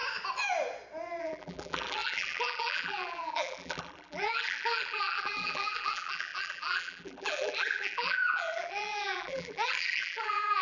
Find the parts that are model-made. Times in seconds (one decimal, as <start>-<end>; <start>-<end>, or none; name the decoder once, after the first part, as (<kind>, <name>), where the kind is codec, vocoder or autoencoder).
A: 1.2-10.6 (vocoder, BigVGAN v2)